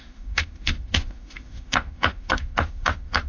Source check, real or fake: fake